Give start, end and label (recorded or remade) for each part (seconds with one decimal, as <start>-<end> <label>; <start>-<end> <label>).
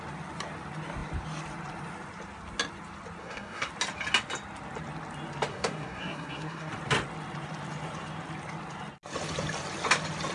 0.0-3.2 recorded; 3.2-3.7 remade; 3.7-5.5 recorded; 5.5-6.7 remade; 6.7-10.3 recorded